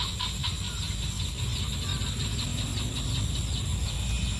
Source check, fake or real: real